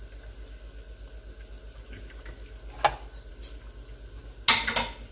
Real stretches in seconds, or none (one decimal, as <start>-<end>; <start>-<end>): 0.0-5.1